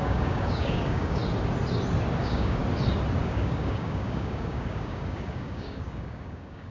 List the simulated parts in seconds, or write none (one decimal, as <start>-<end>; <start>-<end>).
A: 0.0-1.2; 2.2-2.6; 3.2-6.7